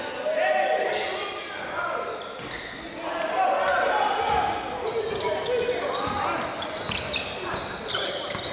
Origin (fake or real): real